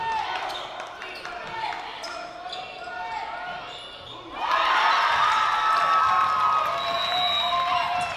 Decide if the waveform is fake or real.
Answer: real